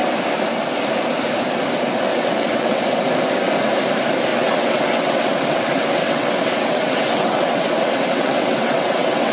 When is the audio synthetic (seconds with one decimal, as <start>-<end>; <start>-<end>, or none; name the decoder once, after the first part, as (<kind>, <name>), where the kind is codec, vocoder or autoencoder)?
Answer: 2.1-2.8 (vocoder, WaveNeXt); 4.3-9.3

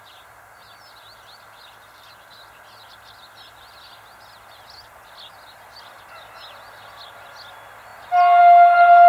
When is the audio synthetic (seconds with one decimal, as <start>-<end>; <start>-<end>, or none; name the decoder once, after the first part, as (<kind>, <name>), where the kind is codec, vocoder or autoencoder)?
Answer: none

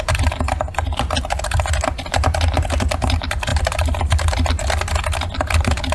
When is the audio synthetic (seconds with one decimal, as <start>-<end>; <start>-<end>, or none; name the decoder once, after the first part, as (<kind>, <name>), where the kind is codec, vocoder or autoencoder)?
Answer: none

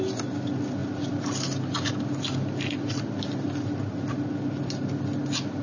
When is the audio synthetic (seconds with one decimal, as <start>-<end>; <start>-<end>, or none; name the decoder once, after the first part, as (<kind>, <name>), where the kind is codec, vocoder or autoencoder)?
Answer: none